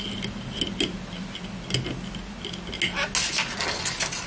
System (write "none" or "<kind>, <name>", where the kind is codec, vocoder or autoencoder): none